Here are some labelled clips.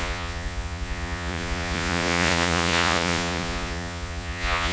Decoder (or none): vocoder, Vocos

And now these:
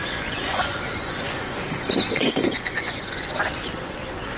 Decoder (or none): vocoder, Vocos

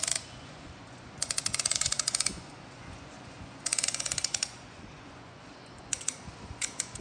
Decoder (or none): vocoder, Vocos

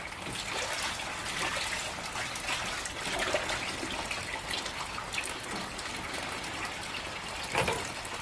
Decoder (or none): none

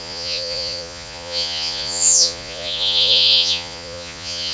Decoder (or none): vocoder, Vocos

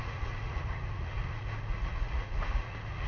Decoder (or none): vocoder, Vocos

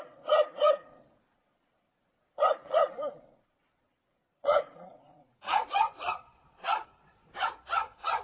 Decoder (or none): vocoder, Vocos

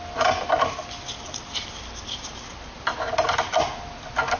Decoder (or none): none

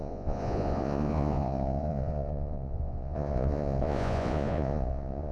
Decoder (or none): vocoder, Vocos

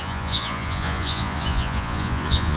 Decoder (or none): vocoder, Vocos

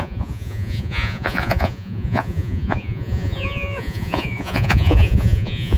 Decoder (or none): vocoder, Vocos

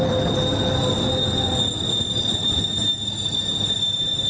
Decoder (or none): none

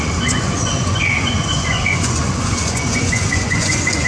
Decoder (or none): vocoder, Vocos